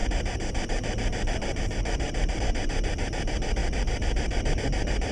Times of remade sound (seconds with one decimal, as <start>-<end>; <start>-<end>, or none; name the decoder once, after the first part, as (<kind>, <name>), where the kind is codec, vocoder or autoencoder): 0.0-2.4 (vocoder, BigVGAN v2); 3.6-4.5